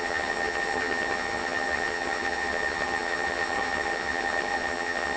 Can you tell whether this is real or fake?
fake